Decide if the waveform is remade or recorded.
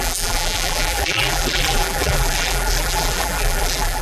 remade